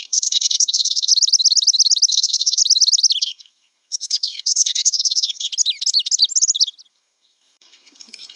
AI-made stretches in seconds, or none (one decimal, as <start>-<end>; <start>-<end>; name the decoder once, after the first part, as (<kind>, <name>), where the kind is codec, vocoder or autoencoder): 0.0-1.1 (codec, SNAC); 2.1-2.6; 3.2-5.5; 6.9-8.4